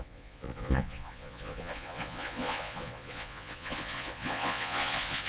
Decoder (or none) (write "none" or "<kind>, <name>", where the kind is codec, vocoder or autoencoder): vocoder, Vocos